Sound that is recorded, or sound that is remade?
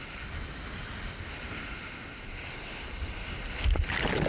recorded